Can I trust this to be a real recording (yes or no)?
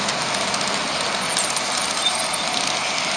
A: yes